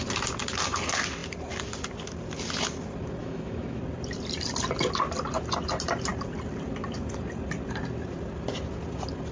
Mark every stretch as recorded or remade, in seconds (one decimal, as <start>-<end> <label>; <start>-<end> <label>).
0.0-3.2 recorded; 3.2-3.8 remade; 3.8-9.3 recorded